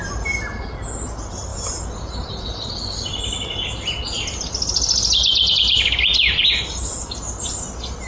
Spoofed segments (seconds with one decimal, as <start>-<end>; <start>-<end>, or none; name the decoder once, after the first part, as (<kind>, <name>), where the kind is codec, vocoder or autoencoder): none